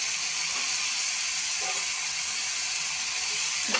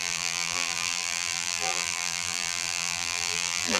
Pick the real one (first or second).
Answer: first